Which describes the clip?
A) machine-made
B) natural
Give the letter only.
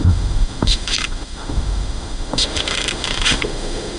A